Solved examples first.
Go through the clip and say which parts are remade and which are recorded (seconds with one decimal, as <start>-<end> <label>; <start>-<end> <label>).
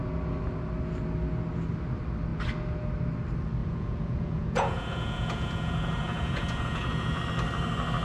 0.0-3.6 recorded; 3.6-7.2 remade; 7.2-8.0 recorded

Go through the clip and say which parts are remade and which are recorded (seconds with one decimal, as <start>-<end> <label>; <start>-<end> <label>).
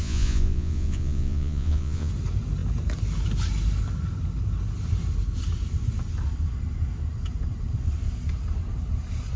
0.0-2.1 remade; 2.1-9.4 recorded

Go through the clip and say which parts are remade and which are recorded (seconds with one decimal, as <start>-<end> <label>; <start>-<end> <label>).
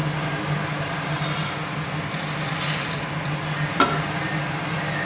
0.0-5.1 recorded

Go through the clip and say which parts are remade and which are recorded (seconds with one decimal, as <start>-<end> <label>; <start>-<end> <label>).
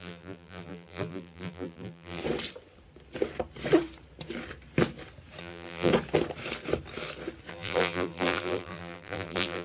0.0-2.2 remade; 2.2-5.4 recorded; 5.4-5.9 remade; 5.9-7.5 recorded; 7.5-9.6 remade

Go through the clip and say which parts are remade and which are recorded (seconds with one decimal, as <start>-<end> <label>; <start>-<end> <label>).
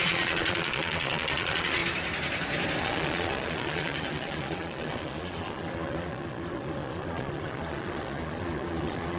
0.0-1.8 remade; 1.8-2.8 recorded; 2.8-9.2 remade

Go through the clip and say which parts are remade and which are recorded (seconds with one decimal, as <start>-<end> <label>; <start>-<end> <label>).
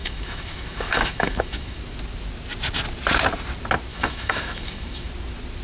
0.0-1.8 remade; 1.8-3.9 recorded; 3.9-5.1 remade; 5.1-5.6 recorded